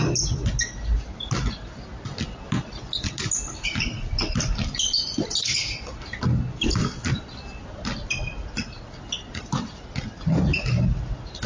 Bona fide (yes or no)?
yes